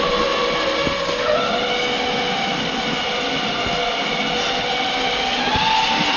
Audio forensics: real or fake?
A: real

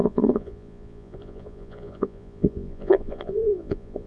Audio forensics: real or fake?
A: fake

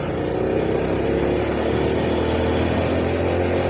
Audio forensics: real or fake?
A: real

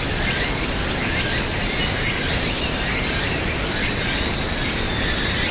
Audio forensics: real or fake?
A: real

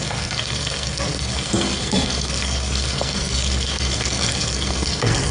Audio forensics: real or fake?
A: fake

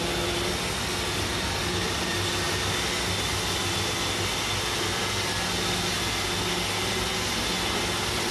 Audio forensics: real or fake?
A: real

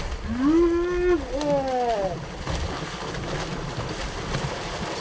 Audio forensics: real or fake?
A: real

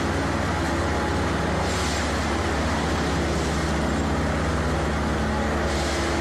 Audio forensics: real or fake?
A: real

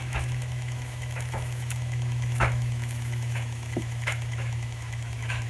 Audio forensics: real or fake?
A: fake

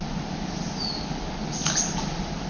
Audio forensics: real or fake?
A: real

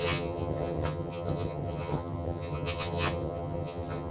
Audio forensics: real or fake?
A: fake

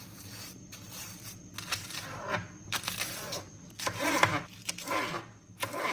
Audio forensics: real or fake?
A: real